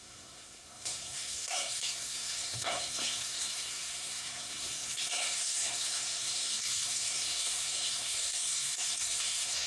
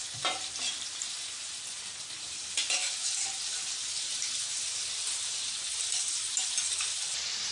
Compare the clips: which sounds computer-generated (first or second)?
first